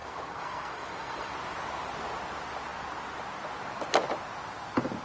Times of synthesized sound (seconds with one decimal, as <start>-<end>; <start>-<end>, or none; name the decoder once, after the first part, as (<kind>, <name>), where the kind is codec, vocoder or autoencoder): 0.0-1.3 (codec, SNAC)